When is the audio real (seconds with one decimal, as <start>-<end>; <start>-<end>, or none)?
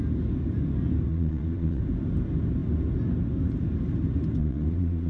0.0-1.1; 1.8-4.4